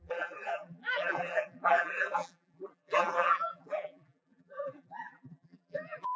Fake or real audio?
fake